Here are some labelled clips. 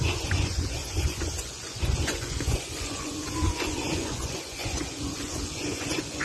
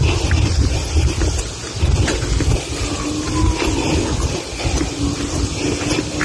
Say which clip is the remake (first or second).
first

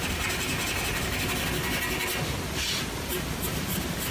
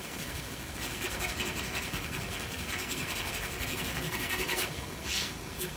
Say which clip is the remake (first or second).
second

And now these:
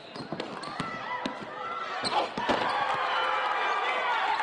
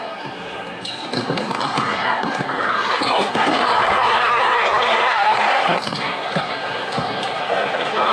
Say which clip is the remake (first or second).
second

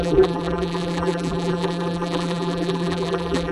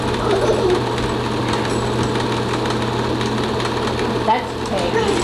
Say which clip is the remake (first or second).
first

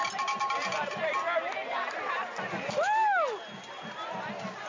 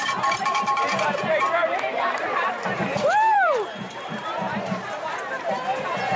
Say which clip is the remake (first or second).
second